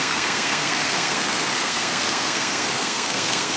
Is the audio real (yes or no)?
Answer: no